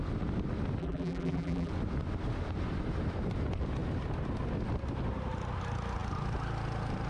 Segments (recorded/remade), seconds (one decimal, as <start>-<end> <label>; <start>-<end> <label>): 0.0-0.8 recorded; 0.8-1.7 remade; 1.7-7.1 recorded